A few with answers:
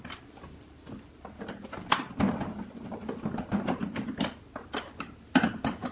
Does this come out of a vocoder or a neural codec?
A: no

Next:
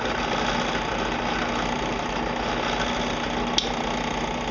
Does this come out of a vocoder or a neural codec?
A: no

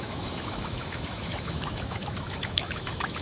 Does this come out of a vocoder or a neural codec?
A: yes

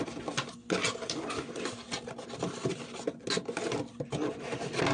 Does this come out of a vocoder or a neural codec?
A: no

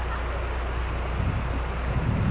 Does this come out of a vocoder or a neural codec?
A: no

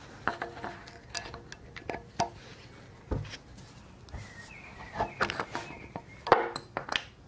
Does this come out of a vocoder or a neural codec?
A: no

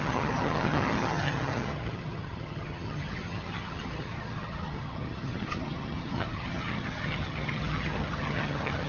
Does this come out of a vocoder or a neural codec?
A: yes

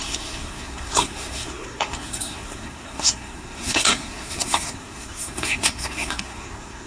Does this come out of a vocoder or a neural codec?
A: yes